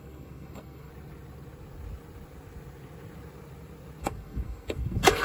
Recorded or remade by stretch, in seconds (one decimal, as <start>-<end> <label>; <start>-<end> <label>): 0.0-0.9 remade; 0.9-4.0 recorded; 4.0-5.2 remade